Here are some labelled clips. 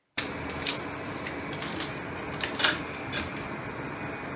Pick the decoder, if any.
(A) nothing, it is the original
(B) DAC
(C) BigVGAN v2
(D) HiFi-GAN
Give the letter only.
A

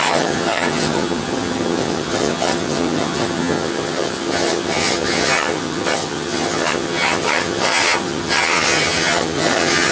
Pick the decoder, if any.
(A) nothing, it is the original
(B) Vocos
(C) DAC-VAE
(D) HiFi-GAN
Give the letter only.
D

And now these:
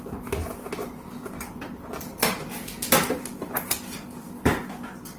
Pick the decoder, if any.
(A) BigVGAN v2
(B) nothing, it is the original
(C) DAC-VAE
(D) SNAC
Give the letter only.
B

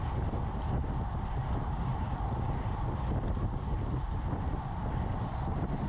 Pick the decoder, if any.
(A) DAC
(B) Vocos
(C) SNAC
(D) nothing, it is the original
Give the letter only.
D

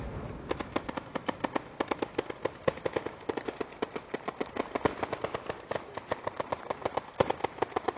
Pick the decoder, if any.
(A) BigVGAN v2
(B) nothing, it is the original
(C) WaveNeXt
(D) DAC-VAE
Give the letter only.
B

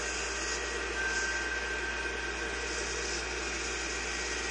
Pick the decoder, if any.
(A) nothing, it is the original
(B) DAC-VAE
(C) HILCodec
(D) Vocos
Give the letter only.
A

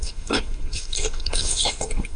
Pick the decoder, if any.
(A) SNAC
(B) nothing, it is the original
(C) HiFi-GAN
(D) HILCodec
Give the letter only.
A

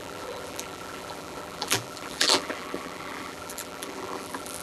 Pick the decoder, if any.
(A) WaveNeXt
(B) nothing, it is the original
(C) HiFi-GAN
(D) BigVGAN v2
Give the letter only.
D